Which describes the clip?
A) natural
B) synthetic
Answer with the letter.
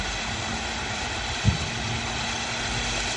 A